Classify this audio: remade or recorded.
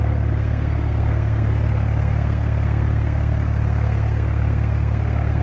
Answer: remade